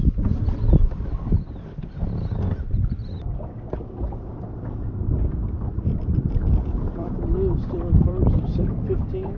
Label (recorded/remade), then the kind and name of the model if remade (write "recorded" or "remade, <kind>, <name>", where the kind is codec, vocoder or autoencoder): remade, vocoder, BigVGAN v2